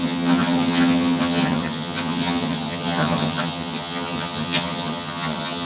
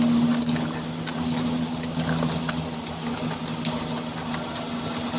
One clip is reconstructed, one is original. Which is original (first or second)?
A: second